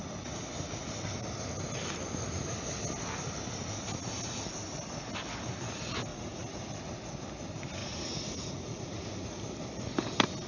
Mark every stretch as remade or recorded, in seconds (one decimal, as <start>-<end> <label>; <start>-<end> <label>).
0.0-6.1 recorded; 6.1-6.8 remade; 6.8-7.8 recorded; 7.8-9.0 remade; 9.0-10.5 recorded